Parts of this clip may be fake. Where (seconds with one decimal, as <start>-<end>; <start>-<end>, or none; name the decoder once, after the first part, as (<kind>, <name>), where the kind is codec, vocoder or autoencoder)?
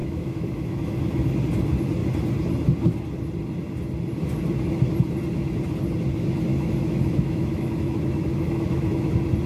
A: 0.0-1.3 (autoencoder, DAC-VAE); 6.5-9.1